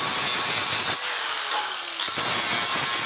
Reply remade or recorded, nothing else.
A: recorded